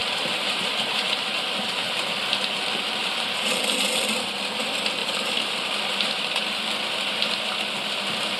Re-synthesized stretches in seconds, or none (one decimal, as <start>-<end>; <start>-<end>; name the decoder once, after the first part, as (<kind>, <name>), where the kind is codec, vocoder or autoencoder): 0.0-2.2 (vocoder, BigVGAN v2); 3.0-4.5; 5.0-6.2